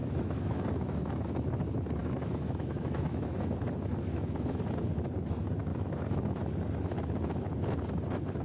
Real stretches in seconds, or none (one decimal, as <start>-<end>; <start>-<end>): 1.3-2.0; 4.6-5.7; 6.4-8.4